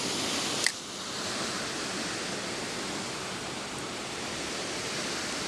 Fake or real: real